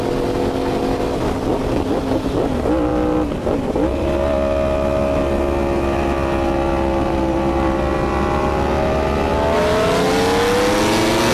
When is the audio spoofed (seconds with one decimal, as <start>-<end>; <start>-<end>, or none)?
none